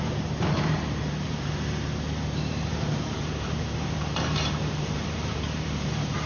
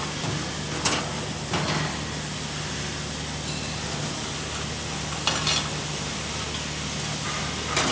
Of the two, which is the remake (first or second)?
first